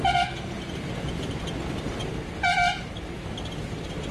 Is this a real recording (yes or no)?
yes